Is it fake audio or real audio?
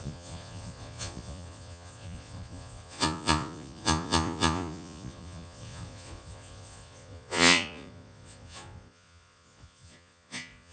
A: fake